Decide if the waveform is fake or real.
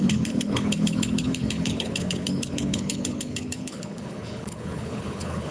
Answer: fake